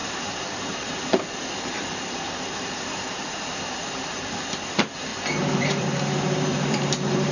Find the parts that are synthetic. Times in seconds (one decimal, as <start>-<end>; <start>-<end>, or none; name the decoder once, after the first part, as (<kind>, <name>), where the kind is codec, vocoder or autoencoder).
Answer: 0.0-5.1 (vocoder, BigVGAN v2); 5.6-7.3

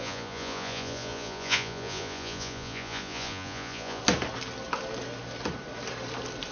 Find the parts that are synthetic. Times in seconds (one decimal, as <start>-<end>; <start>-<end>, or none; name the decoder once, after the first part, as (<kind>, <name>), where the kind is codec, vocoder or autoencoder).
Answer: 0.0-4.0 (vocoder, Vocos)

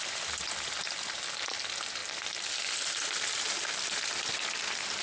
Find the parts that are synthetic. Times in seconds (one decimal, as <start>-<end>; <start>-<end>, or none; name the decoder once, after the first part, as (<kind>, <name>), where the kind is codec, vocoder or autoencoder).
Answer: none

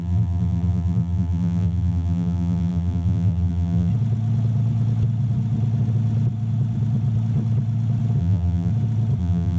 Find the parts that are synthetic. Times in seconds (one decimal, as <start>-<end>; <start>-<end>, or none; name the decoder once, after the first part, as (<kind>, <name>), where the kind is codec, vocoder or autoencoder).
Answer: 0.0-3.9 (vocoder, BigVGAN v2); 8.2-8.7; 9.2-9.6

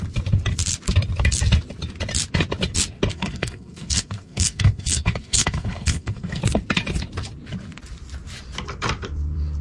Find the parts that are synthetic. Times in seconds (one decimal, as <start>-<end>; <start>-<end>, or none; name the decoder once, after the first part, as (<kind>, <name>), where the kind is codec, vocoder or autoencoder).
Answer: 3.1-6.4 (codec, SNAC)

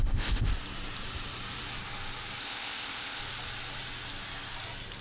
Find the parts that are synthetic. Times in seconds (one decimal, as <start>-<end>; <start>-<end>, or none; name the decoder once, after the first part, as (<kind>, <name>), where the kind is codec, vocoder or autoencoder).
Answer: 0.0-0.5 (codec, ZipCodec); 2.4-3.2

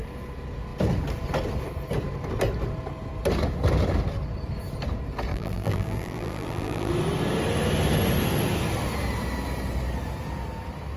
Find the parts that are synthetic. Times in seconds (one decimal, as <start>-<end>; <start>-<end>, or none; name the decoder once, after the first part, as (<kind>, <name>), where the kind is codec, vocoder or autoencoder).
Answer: 5.3-6.9 (vocoder, BigVGAN v2)

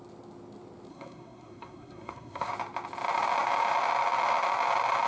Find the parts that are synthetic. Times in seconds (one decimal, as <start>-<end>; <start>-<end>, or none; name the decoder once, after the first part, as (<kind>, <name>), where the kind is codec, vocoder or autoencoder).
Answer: 0.9-2.5 (codec, SNAC)